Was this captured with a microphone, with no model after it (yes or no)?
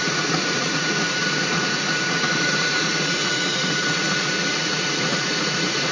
no